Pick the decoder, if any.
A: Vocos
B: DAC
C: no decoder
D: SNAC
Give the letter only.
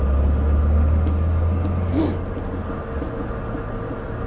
C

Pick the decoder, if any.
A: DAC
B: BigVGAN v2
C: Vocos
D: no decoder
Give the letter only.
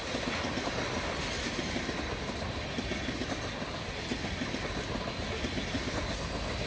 D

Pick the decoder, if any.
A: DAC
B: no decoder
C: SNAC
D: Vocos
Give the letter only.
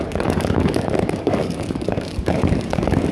A